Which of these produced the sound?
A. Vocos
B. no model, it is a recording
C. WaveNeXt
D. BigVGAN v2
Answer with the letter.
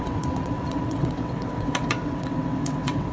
C